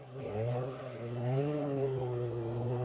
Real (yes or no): no